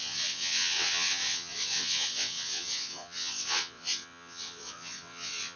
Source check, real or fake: fake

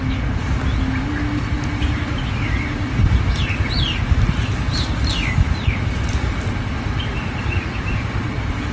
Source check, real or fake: real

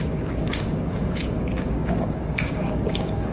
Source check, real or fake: fake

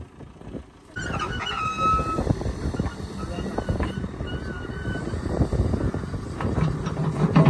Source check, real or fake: real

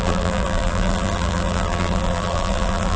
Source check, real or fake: fake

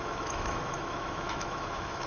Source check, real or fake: fake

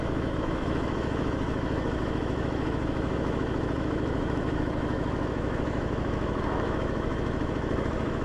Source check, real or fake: fake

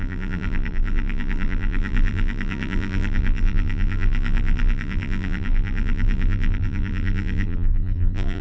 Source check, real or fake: fake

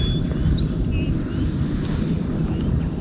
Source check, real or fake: real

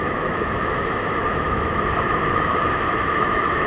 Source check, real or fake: fake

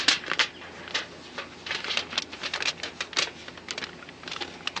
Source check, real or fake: real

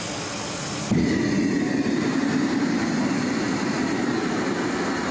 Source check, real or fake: real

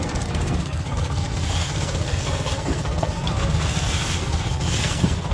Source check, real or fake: fake